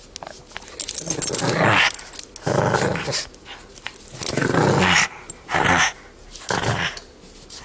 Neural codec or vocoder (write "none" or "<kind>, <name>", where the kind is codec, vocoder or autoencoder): none